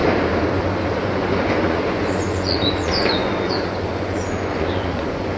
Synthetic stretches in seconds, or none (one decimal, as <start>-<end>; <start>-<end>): 1.0-5.4